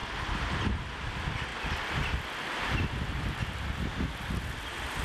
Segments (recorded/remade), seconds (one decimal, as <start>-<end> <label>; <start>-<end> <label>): 0.0-5.0 recorded